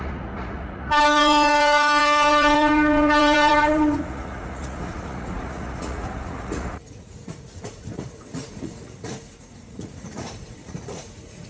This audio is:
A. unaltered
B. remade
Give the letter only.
B